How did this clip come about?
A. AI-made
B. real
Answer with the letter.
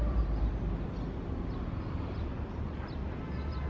B